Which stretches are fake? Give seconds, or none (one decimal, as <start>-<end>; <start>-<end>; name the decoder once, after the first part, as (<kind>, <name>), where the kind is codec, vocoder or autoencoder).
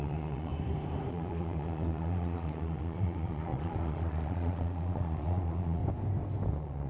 0.0-0.5 (vocoder, Vocos); 1.1-5.8; 6.5-6.9